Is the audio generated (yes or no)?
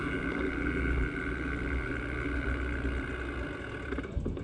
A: no